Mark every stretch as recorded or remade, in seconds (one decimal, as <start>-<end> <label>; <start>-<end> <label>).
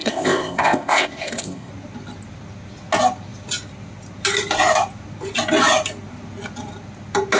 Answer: 0.0-1.7 remade; 1.7-7.4 recorded